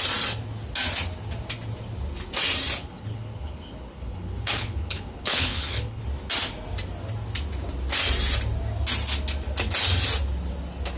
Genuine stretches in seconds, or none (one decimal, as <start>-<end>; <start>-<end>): 0.0-2.8; 6.0-11.0